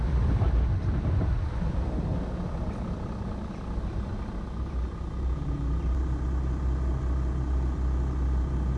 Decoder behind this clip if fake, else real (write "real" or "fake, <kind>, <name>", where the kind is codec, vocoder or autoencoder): real